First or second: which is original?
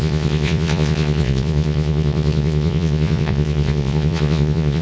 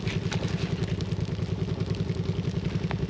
second